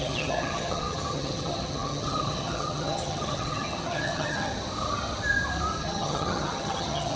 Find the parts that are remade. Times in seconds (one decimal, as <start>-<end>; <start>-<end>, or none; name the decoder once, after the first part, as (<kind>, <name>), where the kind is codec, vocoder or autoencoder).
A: 0.0-4.5 (vocoder, HiFi-GAN); 5.8-7.2